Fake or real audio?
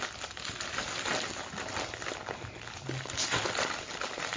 real